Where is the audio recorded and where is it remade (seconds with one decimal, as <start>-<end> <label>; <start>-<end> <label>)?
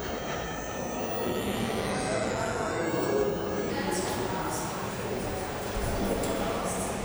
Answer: 0.0-3.7 remade; 3.7-7.0 recorded